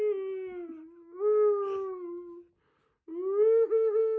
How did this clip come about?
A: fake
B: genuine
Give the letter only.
B